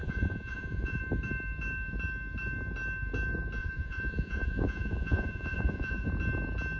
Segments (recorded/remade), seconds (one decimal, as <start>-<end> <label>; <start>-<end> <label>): 0.0-1.0 remade; 1.0-3.6 recorded; 3.6-6.1 remade; 6.1-6.8 recorded